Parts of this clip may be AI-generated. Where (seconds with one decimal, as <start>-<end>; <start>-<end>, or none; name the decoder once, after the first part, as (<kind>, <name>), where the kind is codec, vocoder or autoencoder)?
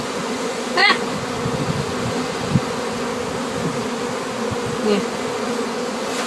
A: 0.0-3.1 (vocoder, Vocos); 5.0-6.3